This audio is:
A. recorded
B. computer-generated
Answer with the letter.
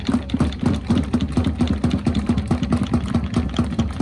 A